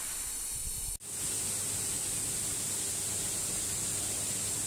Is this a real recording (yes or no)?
yes